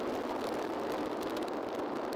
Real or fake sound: real